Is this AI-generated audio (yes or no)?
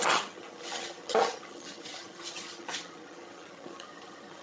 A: yes